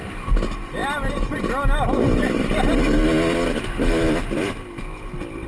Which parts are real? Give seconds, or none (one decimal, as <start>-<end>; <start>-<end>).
0.0-5.5